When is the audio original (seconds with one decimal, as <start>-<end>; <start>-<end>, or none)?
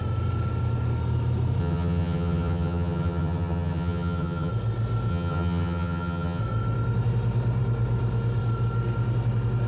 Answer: 0.0-1.6; 4.5-5.1; 6.4-9.7